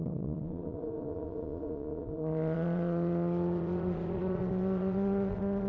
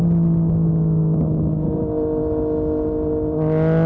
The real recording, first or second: second